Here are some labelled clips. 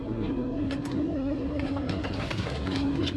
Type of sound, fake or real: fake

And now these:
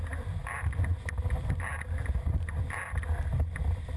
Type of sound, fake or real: real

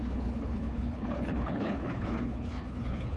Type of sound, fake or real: fake